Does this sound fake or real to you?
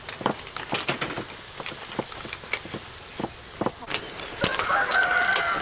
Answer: real